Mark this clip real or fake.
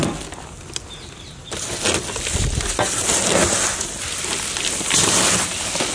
real